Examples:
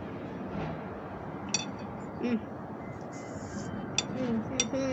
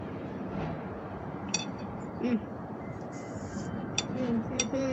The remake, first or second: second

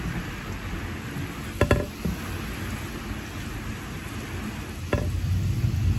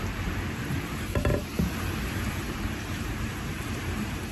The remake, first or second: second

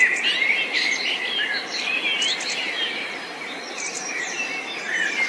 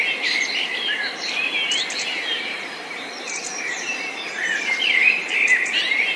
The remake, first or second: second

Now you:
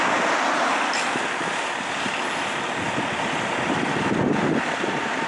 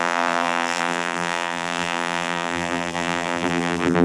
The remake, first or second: second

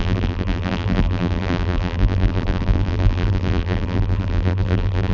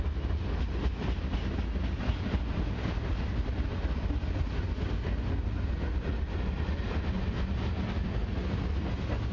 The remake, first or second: first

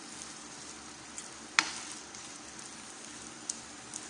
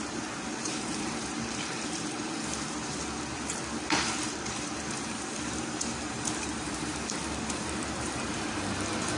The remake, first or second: second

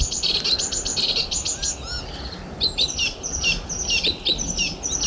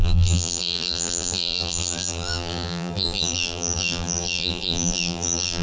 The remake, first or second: second